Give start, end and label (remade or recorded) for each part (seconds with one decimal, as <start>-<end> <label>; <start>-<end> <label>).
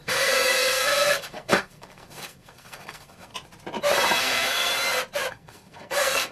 0.0-3.3 remade; 3.3-4.2 recorded; 4.2-4.7 remade; 4.7-5.3 recorded; 5.3-6.3 remade